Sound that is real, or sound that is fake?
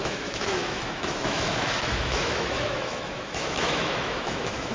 fake